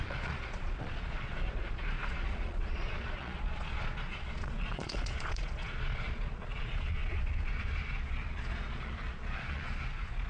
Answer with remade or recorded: remade